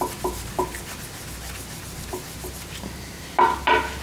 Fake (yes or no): no